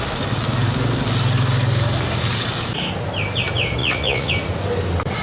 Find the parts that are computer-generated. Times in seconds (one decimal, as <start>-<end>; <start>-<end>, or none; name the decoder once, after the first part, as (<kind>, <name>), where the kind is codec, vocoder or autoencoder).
3.8-4.3 (vocoder, Vocos)